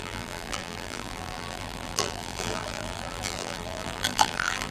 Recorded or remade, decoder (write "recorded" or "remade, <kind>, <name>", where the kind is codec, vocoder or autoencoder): remade, vocoder, BigVGAN v2